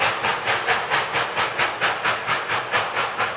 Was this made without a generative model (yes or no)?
yes